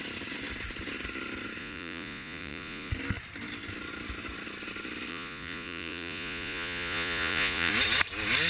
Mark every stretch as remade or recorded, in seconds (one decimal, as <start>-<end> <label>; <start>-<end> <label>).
0.0-1.6 recorded; 1.6-2.9 remade; 2.9-5.1 recorded; 5.1-7.7 remade; 7.7-8.5 recorded